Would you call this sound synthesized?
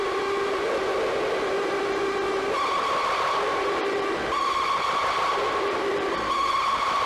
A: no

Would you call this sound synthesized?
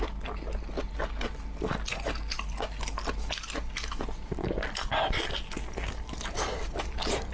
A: no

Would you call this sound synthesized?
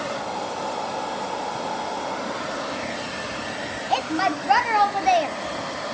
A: no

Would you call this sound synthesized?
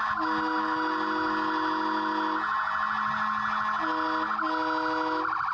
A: no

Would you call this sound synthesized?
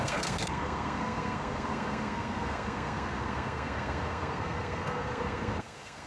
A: yes